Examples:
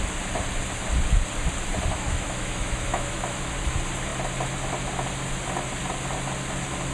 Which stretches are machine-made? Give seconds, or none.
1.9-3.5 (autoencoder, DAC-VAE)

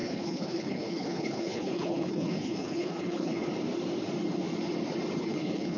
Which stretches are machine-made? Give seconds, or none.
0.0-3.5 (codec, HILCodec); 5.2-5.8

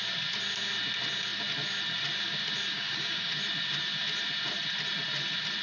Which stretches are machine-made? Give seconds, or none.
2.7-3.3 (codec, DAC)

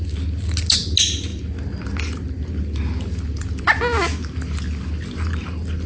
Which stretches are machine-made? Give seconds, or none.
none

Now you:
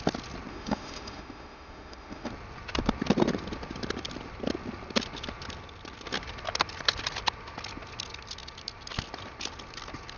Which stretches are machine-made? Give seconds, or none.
0.5-2.3 (autoencoder, DAC-VAE)

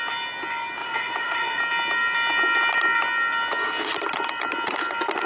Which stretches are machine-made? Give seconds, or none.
0.8-1.6 (vocoder, Vocos)

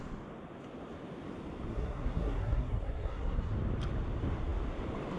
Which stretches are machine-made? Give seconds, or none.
1.7-3.5 (codec, SNAC)